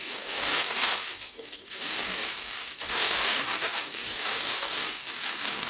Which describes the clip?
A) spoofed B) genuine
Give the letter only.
A